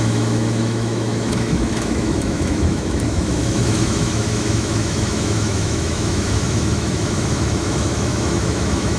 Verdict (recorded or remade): remade